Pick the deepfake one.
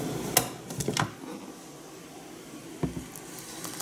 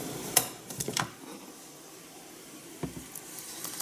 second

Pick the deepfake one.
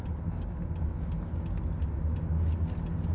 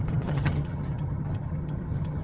second